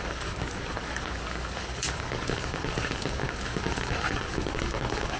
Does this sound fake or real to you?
fake